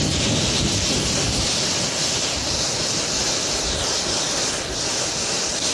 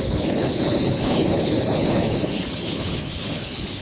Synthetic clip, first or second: second